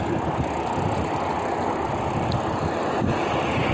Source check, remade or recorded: recorded